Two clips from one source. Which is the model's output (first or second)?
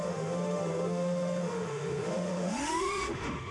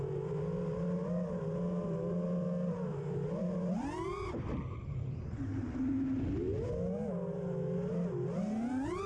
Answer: first